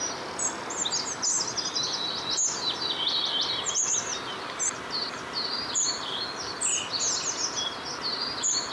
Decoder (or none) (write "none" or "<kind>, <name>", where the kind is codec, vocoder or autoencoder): none